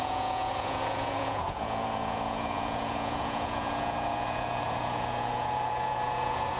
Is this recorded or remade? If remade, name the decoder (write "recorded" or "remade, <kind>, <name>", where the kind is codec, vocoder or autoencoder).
remade, vocoder, Vocos